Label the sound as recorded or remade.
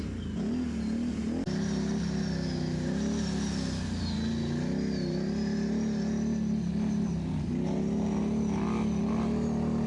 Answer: recorded